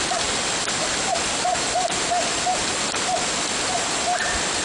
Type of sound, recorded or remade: recorded